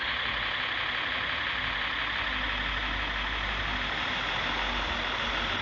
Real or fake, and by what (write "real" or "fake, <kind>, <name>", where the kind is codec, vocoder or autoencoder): real